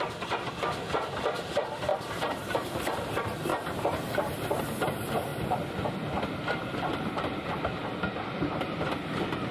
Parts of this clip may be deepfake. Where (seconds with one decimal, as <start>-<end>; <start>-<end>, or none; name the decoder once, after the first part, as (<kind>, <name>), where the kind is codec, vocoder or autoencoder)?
1.9-2.9 (vocoder, BigVGAN v2); 3.5-4.6